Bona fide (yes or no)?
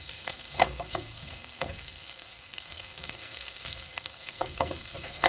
no